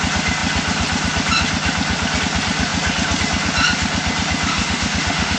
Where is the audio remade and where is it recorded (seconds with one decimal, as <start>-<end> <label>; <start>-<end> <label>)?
0.0-4.5 recorded; 4.5-5.4 remade